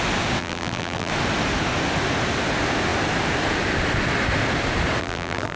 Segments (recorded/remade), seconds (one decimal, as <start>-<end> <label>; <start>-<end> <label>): 0.0-0.4 recorded; 0.4-1.1 remade; 1.1-5.0 recorded; 5.0-5.6 remade